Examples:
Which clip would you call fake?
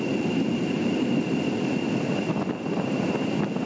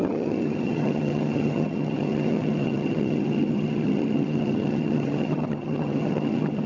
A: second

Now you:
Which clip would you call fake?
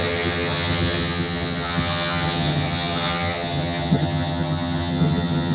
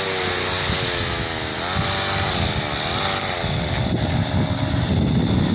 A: first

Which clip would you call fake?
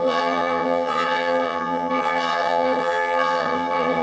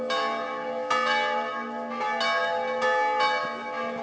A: first